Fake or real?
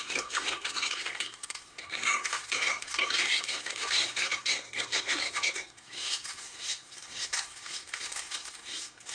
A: fake